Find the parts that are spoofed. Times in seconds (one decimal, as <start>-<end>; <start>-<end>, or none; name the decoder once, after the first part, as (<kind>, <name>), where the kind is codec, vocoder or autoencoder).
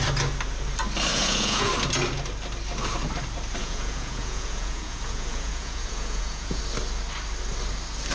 1.1-1.7 (vocoder, Vocos); 3.6-6.6